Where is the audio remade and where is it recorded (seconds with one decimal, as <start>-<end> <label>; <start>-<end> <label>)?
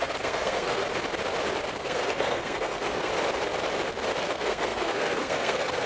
0.0-0.8 remade; 0.8-1.7 recorded; 1.7-3.1 remade; 3.1-4.2 recorded; 4.2-5.9 remade